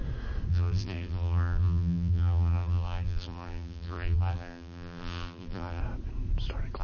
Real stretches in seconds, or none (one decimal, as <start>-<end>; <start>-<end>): 0.0-0.5; 5.8-6.8

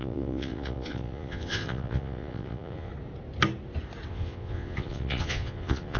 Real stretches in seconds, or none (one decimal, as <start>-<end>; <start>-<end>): 2.9-4.1

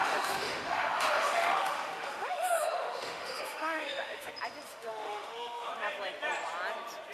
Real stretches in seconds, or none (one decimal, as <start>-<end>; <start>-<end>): 4.3-4.7; 5.7-7.1

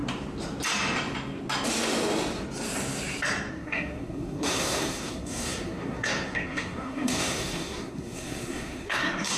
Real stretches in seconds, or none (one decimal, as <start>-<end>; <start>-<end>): 0.0-3.5

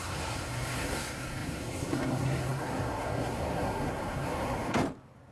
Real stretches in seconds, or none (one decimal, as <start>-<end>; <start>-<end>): 4.8-5.3

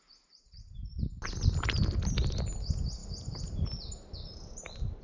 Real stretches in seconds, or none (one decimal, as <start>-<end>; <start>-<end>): 0.0-5.0

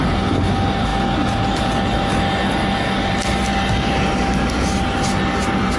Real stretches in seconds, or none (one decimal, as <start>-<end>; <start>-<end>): 0.0-5.8